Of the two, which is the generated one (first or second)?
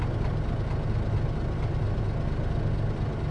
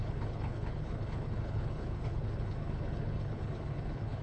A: second